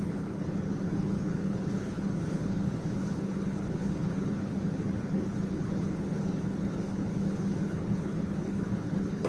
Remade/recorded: remade